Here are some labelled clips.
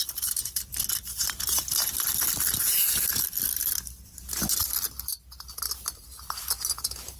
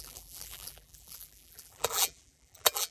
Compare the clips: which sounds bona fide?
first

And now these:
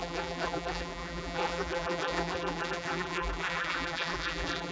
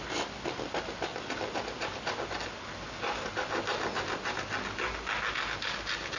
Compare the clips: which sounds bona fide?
second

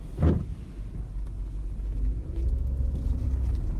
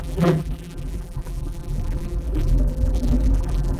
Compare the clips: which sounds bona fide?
first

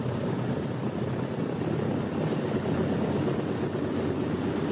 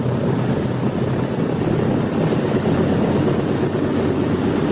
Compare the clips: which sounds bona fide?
second